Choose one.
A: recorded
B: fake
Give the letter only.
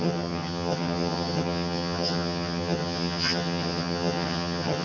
B